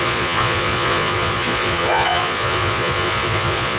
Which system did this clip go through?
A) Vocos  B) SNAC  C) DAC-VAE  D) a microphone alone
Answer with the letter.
A